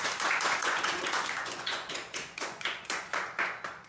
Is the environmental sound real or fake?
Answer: fake